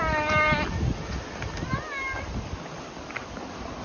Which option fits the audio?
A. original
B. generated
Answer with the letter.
A